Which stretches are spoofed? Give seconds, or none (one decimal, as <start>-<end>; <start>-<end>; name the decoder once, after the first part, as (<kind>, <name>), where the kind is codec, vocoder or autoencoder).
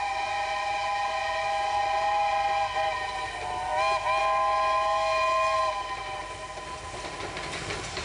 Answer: none